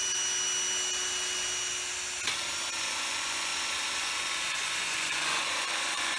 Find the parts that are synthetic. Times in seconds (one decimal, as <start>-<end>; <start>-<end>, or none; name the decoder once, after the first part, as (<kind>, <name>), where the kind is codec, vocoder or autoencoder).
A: 2.8-3.5 (vocoder, Vocos); 4.0-6.2